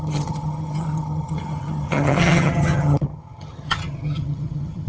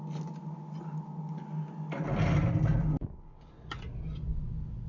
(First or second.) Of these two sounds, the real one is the second